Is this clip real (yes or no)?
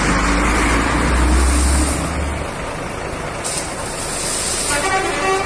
yes